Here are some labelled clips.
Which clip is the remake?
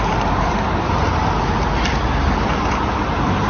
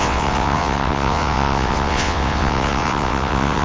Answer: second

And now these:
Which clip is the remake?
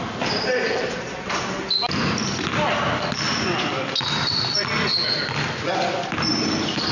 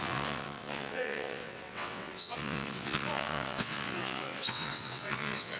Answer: second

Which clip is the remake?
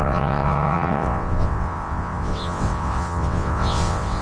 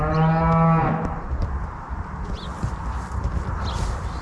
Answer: first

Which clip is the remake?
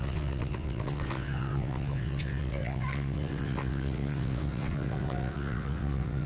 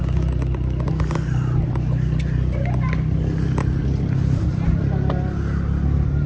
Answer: first